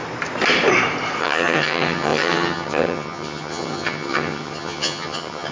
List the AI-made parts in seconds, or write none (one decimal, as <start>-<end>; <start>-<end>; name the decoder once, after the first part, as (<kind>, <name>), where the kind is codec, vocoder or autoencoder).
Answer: 1.2-5.5 (vocoder, HiFi-GAN)